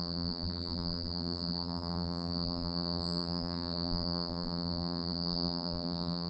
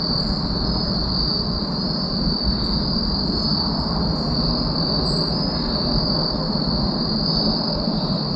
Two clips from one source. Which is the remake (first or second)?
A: first